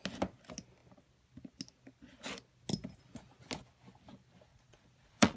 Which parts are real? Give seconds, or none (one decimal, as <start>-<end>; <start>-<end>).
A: 0.0-4.5